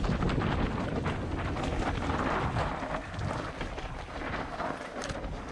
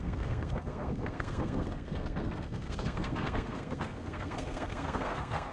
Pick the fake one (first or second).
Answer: second